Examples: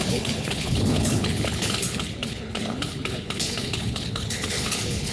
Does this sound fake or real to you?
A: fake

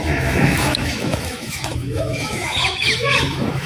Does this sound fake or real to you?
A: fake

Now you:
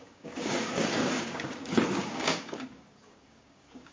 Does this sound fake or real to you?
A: fake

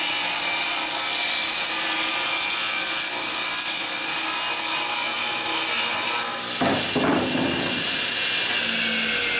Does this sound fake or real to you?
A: real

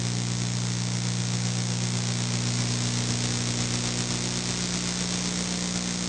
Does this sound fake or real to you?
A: real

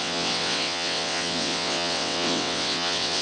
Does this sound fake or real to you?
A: fake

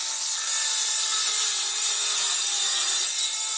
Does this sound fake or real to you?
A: real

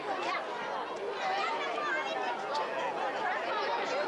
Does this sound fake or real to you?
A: real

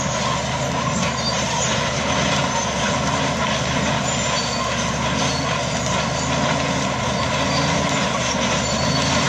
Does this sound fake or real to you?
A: real